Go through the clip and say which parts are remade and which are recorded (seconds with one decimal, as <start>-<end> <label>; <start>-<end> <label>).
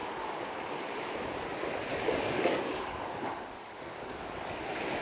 0.0-0.8 remade; 0.8-1.9 recorded; 1.9-4.5 remade; 4.5-5.0 recorded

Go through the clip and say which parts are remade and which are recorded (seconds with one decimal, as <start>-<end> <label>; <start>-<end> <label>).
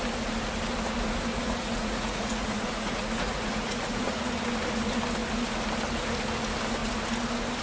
0.0-1.3 recorded; 1.3-4.3 remade; 4.3-7.6 recorded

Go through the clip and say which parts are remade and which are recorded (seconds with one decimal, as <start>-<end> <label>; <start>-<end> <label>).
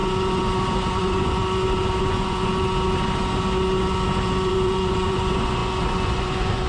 0.0-1.0 recorded; 1.0-1.4 remade; 1.4-2.0 recorded; 2.0-2.5 remade; 2.5-4.5 recorded; 4.5-6.7 remade